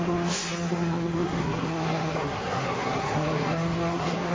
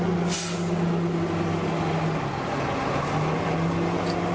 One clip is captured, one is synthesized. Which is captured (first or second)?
second